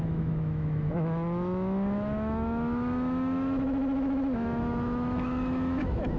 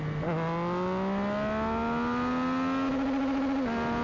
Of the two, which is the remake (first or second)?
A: first